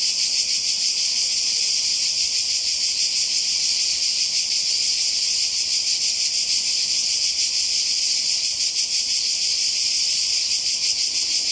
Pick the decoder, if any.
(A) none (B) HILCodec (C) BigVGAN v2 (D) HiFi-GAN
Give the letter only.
C